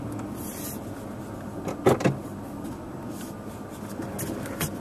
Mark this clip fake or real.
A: real